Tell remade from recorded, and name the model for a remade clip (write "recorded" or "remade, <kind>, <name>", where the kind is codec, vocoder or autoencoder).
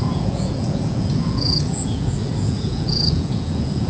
remade, vocoder, Vocos